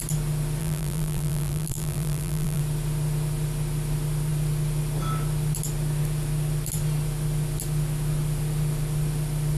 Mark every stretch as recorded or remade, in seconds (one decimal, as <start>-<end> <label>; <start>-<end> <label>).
0.0-0.6 recorded; 0.6-2.6 remade; 2.6-9.6 recorded